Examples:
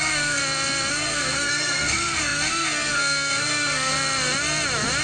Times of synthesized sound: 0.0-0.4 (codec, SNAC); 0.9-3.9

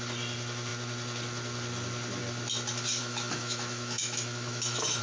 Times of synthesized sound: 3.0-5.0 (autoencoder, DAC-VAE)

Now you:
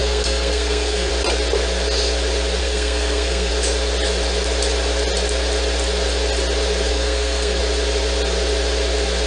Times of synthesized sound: 0.0-1.1 (codec, SNAC); 2.6-3.5; 6.9-7.6

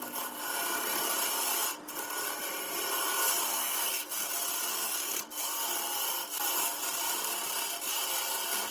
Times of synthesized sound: 3.5-4.3 (codec, SNAC); 4.7-5.5

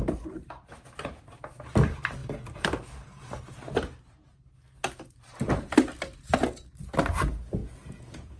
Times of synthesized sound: 7.6-8.4 (vocoder, Vocos)

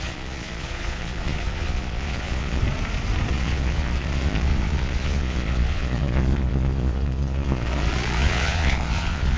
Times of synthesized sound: 0.0-2.6 (vocoder, Vocos); 3.3-9.4

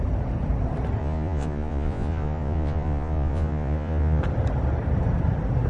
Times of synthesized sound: 1.0-4.2 (vocoder, Vocos)

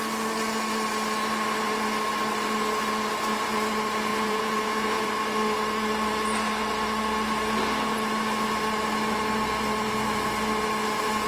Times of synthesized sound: 4.1-5.1 (vocoder, Vocos)